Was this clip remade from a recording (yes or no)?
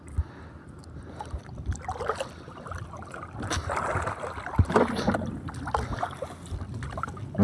no